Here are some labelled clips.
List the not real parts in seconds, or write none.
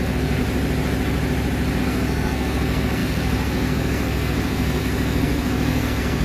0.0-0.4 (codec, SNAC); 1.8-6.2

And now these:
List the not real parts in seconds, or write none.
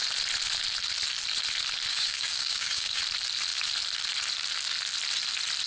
1.9-3.0 (codec, DAC)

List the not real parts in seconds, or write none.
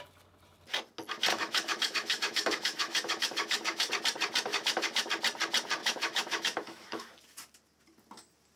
1.3-3.9 (autoencoder, DAC-VAE); 4.5-5.1; 5.8-7.1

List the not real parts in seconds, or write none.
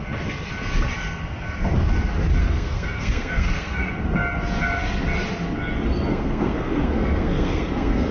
2.4-3.9 (codec, SNAC); 6.1-8.1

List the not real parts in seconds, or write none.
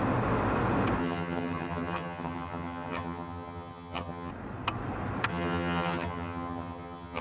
1.0-4.3 (vocoder, HiFi-GAN); 5.3-7.2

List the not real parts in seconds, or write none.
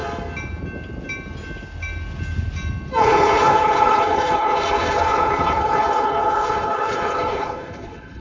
3.0-8.2 (codec, HILCodec)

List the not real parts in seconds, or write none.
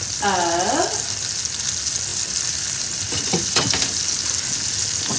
2.1-4.0 (vocoder, BigVGAN v2)